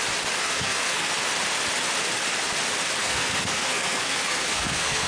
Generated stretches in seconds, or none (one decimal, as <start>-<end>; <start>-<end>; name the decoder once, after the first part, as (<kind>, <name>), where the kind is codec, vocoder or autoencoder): 0.4-1.1 (codec, SNAC); 3.0-5.1